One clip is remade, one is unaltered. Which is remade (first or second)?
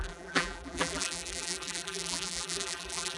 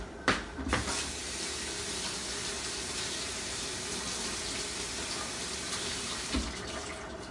first